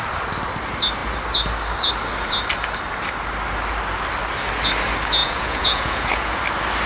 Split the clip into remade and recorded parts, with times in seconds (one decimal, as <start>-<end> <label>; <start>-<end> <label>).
0.0-5.2 recorded; 5.2-6.4 remade; 6.4-6.9 recorded

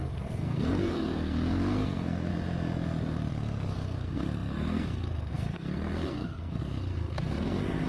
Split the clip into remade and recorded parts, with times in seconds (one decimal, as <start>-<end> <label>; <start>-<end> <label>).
0.0-2.3 remade; 2.3-3.3 recorded; 3.3-7.9 remade

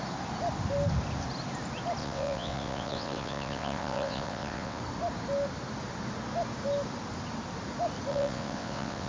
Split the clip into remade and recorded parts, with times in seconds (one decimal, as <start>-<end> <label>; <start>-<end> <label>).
0.0-2.0 recorded; 2.0-4.8 remade; 4.8-8.1 recorded; 8.1-9.1 remade

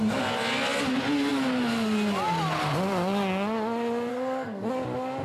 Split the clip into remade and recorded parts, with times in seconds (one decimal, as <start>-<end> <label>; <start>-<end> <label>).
0.0-4.1 recorded; 4.1-4.7 remade; 4.7-5.2 recorded

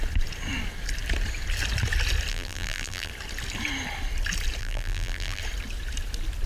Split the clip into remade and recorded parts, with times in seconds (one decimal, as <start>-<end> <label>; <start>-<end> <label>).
0.0-2.3 recorded; 2.3-3.1 remade; 3.1-4.6 recorded; 4.6-5.4 remade; 5.4-6.5 recorded

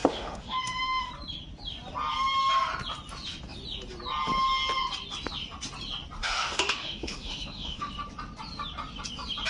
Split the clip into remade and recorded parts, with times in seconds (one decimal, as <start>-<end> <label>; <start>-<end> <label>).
0.0-1.1 remade; 1.1-6.2 recorded; 6.2-7.9 remade; 7.9-9.5 recorded